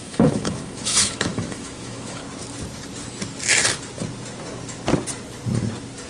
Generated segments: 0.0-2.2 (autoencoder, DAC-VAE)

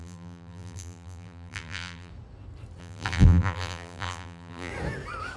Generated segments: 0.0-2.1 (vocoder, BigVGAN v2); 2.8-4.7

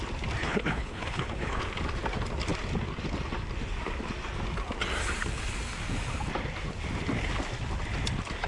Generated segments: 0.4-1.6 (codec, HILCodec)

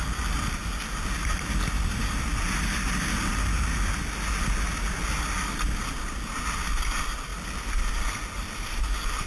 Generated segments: none

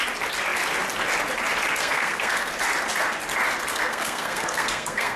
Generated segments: 1.8-2.5 (codec, SNAC); 3.7-5.2

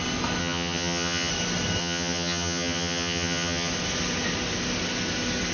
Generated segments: 0.4-1.3 (vocoder, HiFi-GAN); 1.8-3.7

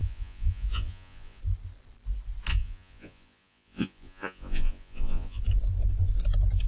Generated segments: 0.0-1.4 (vocoder, Vocos); 2.5-5.4

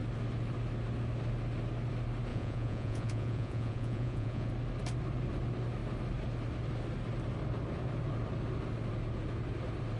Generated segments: 2.3-4.5 (vocoder, Vocos)